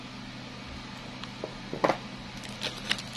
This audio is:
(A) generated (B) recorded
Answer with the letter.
B